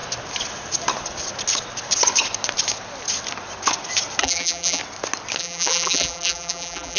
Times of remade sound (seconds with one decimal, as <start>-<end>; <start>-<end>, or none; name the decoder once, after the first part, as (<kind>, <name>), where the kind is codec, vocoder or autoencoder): 4.2-4.8 (vocoder, BigVGAN v2); 5.4-7.0